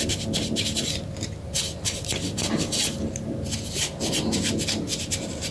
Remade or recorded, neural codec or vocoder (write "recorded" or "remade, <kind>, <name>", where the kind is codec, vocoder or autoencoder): recorded